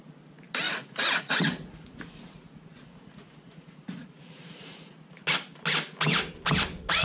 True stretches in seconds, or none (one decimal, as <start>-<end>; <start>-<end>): 0.0-0.7; 4.9-7.0